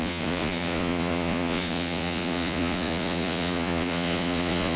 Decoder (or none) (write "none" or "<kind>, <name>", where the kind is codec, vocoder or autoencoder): vocoder, Vocos